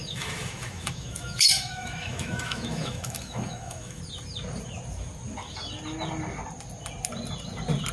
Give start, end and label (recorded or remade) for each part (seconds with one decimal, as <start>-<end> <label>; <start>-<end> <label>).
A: 0.0-4.0 remade; 4.0-7.9 recorded